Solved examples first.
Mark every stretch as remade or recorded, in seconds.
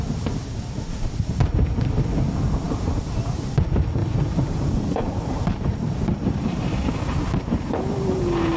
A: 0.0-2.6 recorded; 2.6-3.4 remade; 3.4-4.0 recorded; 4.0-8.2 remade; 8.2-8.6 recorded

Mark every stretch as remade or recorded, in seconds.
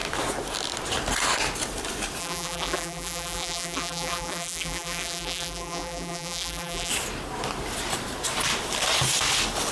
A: 0.0-2.2 recorded; 2.2-6.9 remade; 6.9-9.7 recorded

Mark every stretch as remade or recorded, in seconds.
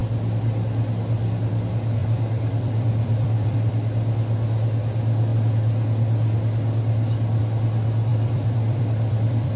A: 0.0-2.0 recorded; 2.0-3.7 remade; 3.7-8.1 recorded; 8.1-9.6 remade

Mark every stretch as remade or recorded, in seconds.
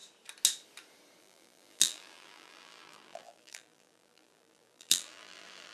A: 0.0-1.2 recorded; 1.2-5.7 remade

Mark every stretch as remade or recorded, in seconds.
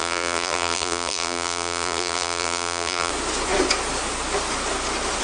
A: 0.0-3.1 remade; 3.1-5.2 recorded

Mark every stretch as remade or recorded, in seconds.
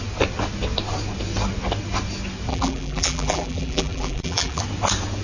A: 0.0-2.5 recorded; 2.5-4.6 remade; 4.6-5.2 recorded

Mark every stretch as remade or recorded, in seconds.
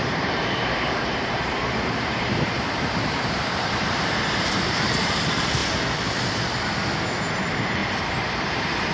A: 0.0-5.6 remade; 5.6-7.3 recorded; 7.3-8.9 remade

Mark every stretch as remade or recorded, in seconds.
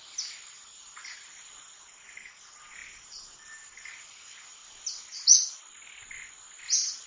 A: 0.0-0.7 recorded; 0.7-1.4 remade; 1.4-2.8 recorded; 2.8-3.5 remade; 3.5-7.1 recorded